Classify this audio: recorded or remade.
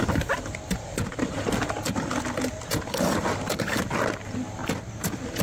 recorded